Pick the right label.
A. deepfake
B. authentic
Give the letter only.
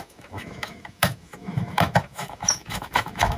A